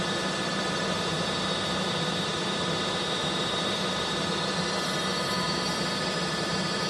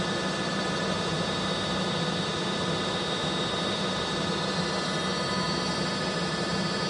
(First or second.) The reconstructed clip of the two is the first